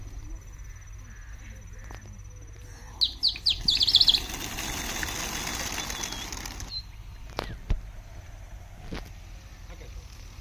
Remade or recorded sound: recorded